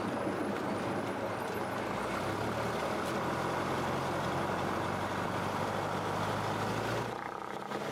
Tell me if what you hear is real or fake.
real